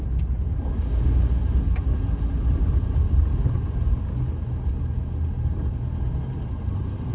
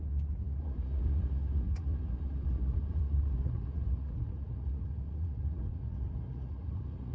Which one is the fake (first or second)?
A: second